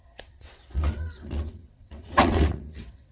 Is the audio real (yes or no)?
no